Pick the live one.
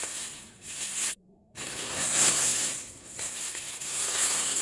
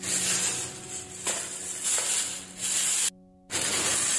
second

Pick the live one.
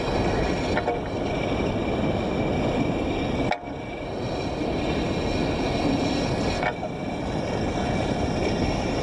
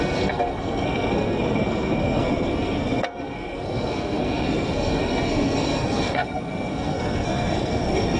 first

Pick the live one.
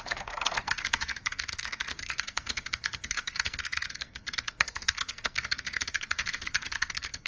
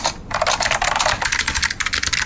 second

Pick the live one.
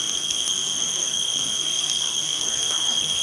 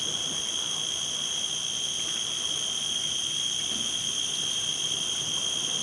second